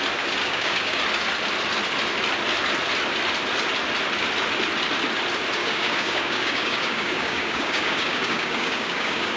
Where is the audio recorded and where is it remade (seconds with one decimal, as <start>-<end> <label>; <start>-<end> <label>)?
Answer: 0.0-0.4 recorded; 0.4-1.0 remade; 1.0-5.6 recorded; 5.6-9.4 remade